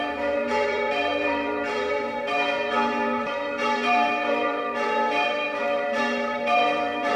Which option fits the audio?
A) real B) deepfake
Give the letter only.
B